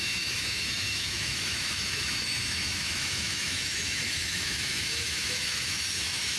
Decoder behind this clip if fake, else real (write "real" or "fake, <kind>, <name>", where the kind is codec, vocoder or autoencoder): fake, autoencoder, DAC-VAE